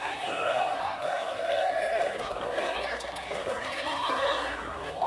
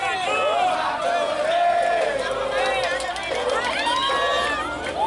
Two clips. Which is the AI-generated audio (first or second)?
first